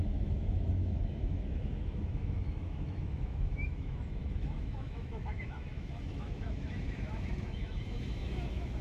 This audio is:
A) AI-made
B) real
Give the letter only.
A